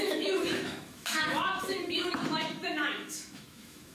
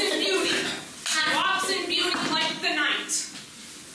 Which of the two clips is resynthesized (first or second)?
first